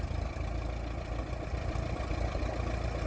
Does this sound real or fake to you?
real